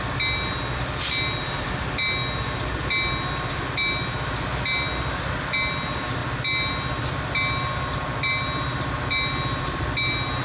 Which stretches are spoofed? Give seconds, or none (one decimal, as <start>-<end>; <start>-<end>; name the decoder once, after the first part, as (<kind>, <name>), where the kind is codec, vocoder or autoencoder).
none